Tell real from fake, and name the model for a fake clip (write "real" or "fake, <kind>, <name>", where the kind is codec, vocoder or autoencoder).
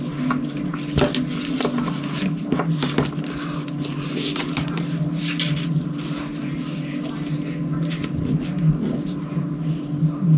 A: real